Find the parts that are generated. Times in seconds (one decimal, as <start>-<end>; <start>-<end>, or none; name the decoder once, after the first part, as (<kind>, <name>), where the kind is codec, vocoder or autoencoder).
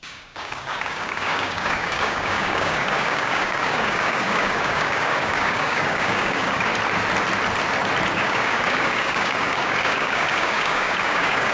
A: 0.0-6.7 (codec, DAC); 8.1-11.5